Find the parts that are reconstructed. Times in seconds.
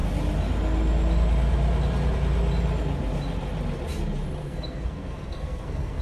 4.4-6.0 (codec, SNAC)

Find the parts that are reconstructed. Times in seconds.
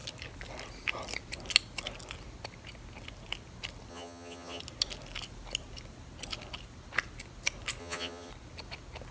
3.9-4.6 (vocoder, HiFi-GAN); 7.8-8.3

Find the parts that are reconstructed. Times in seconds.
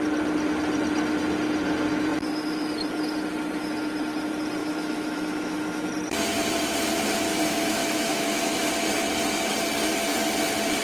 4.6-5.9 (autoencoder, DAC-VAE); 7.3-8.7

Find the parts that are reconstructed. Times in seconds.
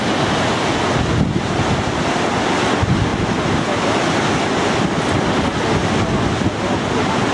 none